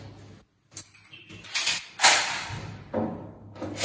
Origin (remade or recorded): recorded